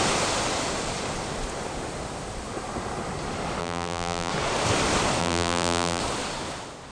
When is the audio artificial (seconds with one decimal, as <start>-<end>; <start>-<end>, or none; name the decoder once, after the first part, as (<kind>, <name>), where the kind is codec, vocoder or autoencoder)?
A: 3.6-4.3 (vocoder, BigVGAN v2); 5.2-6.0